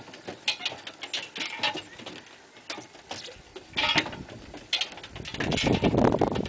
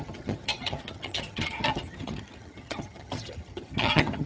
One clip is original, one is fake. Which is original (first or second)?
first